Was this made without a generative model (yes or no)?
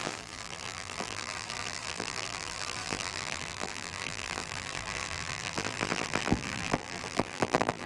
no